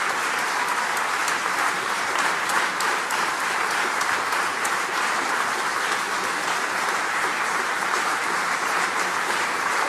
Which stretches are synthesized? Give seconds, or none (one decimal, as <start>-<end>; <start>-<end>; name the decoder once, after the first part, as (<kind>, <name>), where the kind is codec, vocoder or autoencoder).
1.2-3.3 (vocoder, BigVGAN v2); 4.5-5.9; 6.4-9.9